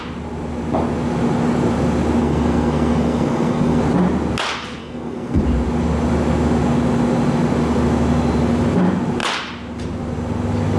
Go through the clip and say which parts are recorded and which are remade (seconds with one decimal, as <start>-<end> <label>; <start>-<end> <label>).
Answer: 0.0-2.2 recorded; 2.2-3.8 remade; 3.8-4.8 recorded; 4.8-5.4 remade; 5.4-10.8 recorded